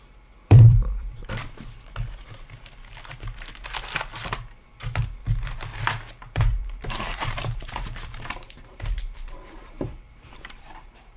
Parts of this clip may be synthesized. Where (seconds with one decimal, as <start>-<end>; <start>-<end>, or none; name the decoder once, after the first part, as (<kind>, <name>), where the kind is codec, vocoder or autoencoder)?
0.0-1.2 (vocoder, BigVGAN v2); 6.2-11.2